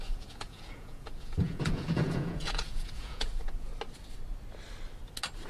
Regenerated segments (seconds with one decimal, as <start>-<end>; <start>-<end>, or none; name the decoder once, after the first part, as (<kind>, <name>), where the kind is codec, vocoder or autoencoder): 0.0-3.7 (vocoder, Vocos)